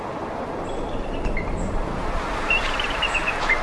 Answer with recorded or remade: recorded